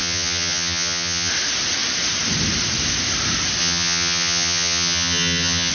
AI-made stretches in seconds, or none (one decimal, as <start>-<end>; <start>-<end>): 0.0-1.3; 3.6-5.7